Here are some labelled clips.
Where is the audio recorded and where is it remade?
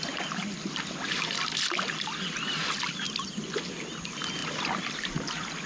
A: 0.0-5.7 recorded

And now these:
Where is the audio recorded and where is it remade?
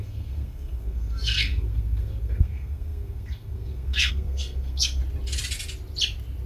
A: 0.0-5.0 remade; 5.0-6.5 recorded